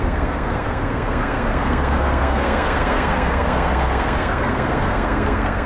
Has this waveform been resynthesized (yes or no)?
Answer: yes